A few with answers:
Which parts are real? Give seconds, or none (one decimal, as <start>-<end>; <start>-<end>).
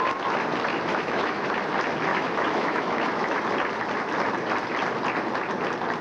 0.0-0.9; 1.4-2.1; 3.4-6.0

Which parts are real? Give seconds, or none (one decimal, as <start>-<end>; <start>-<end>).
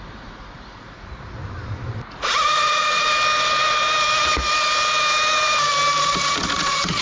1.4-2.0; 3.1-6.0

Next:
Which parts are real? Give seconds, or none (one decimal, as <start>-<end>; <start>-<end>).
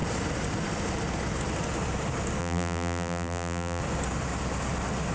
0.0-2.4; 3.8-5.1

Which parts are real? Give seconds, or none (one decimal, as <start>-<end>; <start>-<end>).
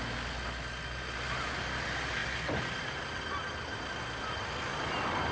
0.0-5.3